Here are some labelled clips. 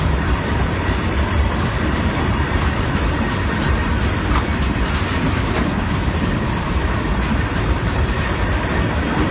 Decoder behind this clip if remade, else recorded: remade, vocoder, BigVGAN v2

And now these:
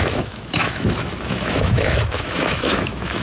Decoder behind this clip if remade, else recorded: remade, autoencoder, DAC-VAE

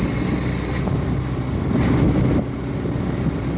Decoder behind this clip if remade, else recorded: recorded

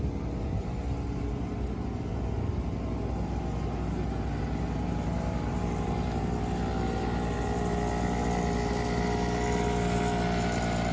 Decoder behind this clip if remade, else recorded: recorded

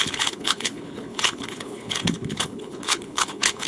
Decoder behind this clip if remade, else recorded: remade, codec, HILCodec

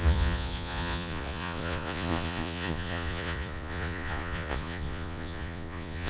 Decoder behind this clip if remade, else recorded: remade, vocoder, Vocos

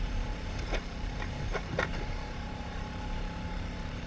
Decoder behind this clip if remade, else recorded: remade, vocoder, BigVGAN v2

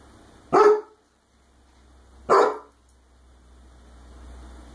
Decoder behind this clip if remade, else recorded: recorded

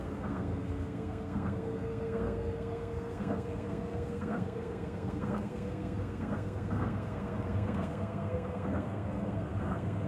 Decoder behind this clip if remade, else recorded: remade, codec, SNAC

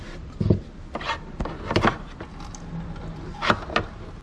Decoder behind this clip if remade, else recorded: recorded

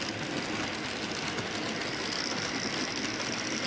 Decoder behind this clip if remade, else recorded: recorded